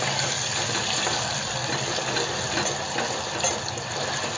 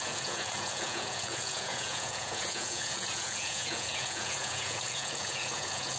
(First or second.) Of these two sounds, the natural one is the first